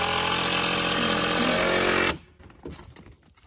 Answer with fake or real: real